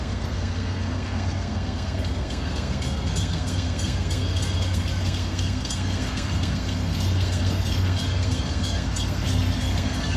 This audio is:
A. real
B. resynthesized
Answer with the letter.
B